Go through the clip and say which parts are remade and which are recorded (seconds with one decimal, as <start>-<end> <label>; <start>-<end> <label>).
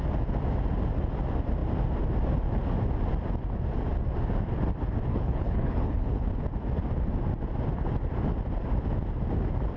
0.0-5.1 recorded; 5.1-6.2 remade; 6.2-9.8 recorded